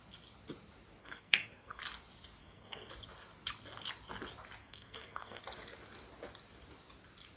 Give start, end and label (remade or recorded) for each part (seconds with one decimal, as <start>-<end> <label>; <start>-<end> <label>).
0.0-1.0 recorded; 1.0-1.8 remade; 1.8-2.4 recorded; 2.4-2.9 remade; 2.9-4.6 recorded; 4.6-5.4 remade; 5.4-7.4 recorded